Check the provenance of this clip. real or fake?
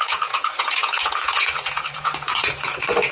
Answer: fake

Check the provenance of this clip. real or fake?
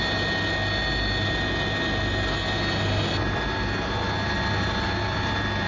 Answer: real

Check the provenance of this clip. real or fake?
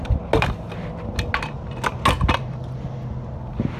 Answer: real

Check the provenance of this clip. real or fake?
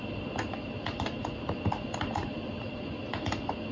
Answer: real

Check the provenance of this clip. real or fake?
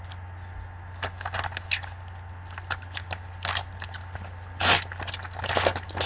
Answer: real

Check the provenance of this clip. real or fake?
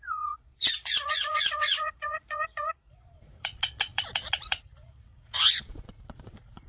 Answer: fake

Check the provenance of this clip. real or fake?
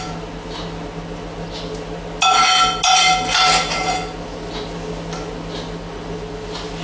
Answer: real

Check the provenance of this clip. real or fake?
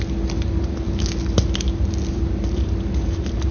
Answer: real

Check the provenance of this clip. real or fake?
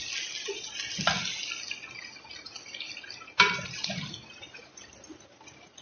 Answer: real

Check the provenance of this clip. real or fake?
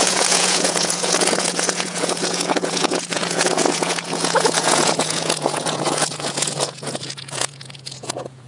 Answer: fake